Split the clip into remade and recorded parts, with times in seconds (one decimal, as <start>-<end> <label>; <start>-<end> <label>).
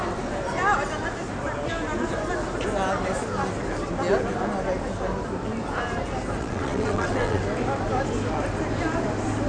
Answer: 0.0-6.4 recorded; 6.4-7.4 remade; 7.4-9.5 recorded